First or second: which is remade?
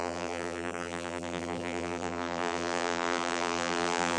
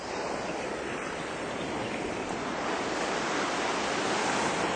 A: first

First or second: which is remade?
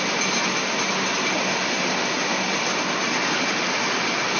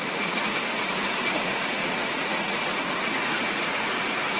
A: second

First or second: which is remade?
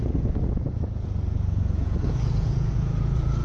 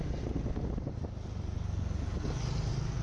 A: first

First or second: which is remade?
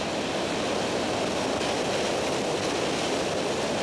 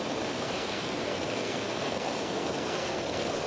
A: second